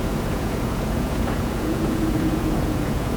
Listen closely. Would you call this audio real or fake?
fake